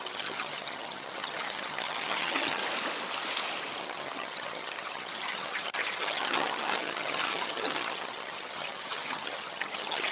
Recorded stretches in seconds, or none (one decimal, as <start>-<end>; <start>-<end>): 2.6-3.8